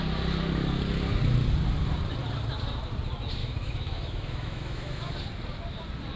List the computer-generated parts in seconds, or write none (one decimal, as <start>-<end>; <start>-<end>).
3.4-5.1